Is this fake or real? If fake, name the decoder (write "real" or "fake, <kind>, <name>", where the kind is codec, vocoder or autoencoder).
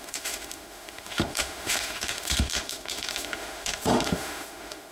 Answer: fake, autoencoder, DAC-VAE